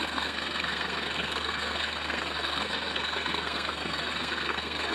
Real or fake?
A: fake